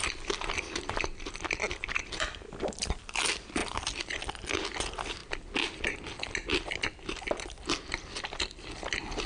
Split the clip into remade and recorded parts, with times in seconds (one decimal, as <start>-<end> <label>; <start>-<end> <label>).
0.0-3.6 remade; 3.6-4.8 recorded; 4.8-5.2 remade; 5.2-6.2 recorded; 6.2-9.3 remade